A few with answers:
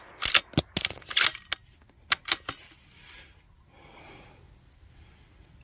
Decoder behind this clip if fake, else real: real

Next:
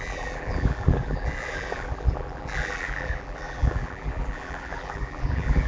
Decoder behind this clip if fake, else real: fake, vocoder, BigVGAN v2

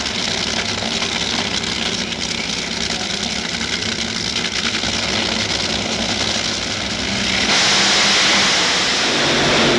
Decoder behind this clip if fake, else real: real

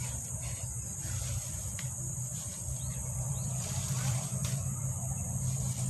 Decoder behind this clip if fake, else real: fake, vocoder, BigVGAN v2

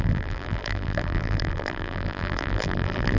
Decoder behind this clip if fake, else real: fake, vocoder, BigVGAN v2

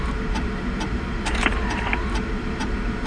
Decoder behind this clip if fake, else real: fake, vocoder, BigVGAN v2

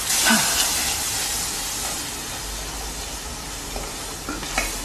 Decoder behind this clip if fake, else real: real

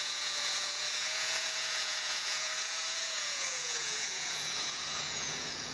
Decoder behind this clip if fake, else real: fake, vocoder, Vocos